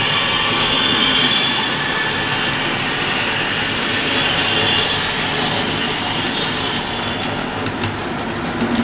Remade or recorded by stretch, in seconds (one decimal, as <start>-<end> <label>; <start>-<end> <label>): 0.0-0.9 recorded; 0.9-1.8 remade; 1.8-8.8 recorded